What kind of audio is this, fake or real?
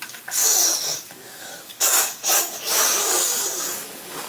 fake